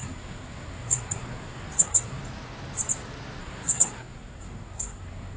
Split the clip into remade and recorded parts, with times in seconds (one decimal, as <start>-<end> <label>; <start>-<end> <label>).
0.0-2.2 remade; 2.2-3.4 recorded; 3.4-5.4 remade